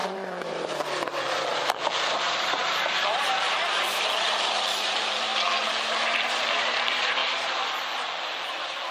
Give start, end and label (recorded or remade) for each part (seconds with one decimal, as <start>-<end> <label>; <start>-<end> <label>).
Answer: 0.0-8.9 remade